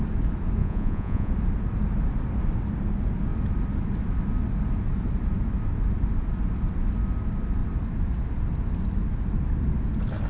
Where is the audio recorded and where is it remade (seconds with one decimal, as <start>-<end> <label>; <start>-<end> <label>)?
0.0-0.6 recorded; 0.6-1.3 remade; 1.3-10.3 recorded